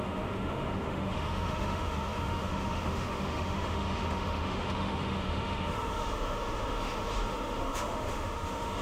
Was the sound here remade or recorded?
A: remade